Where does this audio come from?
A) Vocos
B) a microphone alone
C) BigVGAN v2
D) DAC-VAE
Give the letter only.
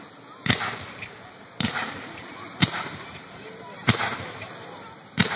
C